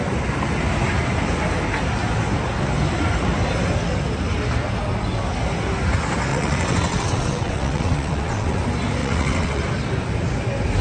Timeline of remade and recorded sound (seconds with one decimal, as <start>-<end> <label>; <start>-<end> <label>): 0.0-6.3 recorded; 6.3-8.6 remade; 8.6-9.0 recorded; 9.0-9.6 remade; 9.6-10.8 recorded